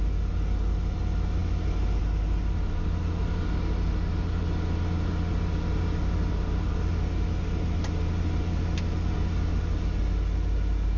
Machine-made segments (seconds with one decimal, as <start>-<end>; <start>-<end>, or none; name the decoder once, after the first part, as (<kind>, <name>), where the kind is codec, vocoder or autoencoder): none